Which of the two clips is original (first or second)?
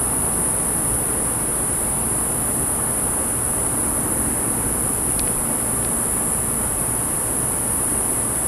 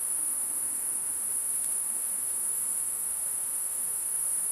first